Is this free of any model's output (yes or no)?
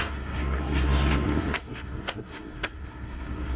no